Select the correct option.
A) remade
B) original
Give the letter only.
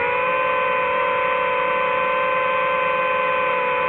B